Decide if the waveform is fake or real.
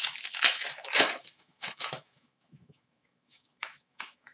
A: fake